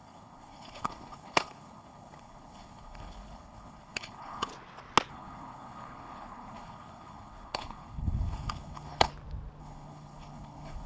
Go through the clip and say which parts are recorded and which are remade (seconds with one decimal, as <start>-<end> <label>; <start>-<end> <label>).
0.0-4.5 remade; 4.5-5.1 recorded; 5.1-9.1 remade; 9.1-9.6 recorded; 9.6-10.9 remade